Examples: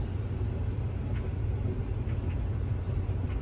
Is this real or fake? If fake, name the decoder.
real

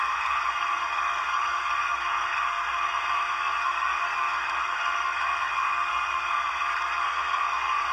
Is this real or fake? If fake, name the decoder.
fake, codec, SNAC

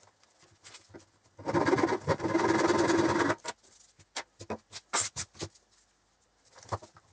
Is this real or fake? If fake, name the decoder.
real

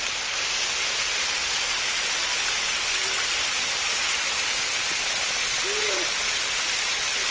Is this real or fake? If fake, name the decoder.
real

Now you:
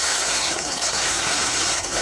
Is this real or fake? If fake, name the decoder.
fake, codec, SNAC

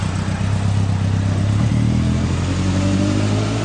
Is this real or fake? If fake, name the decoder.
real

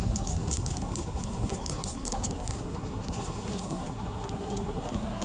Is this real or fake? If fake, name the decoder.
fake, codec, SNAC